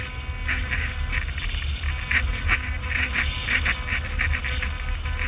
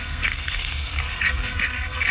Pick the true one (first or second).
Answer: first